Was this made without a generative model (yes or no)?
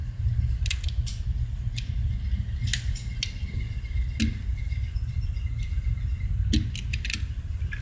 yes